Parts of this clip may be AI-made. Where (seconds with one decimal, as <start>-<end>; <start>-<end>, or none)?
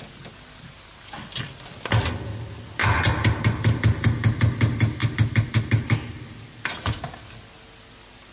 none